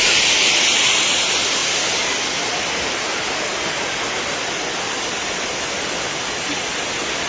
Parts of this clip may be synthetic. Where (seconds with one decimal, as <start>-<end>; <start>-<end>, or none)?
none

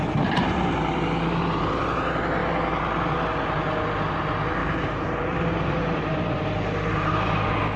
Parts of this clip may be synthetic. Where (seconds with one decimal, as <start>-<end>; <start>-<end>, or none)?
4.6-7.1

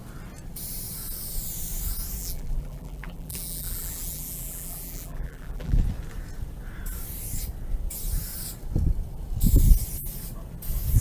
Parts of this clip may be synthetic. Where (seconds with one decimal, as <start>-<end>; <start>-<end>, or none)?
2.2-5.8

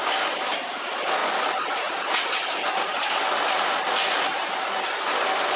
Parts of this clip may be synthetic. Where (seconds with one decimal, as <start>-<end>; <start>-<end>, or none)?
none

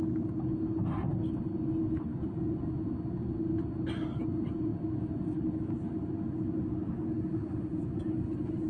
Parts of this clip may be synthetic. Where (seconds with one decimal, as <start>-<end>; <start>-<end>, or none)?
none